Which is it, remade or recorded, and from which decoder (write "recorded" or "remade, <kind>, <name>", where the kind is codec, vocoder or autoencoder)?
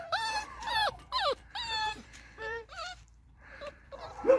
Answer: remade, vocoder, BigVGAN v2